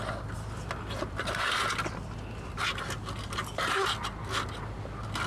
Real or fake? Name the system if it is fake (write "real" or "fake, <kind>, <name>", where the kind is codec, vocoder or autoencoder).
real